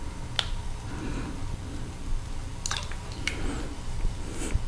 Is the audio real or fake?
real